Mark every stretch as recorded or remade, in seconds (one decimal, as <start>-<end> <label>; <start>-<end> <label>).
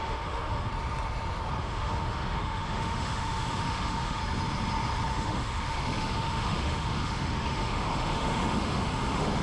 0.0-0.7 remade; 0.7-1.6 recorded; 1.6-4.2 remade; 4.2-5.1 recorded; 5.1-9.4 remade